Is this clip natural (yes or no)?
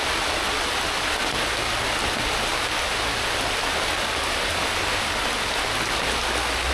yes